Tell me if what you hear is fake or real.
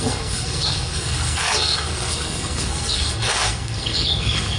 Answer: fake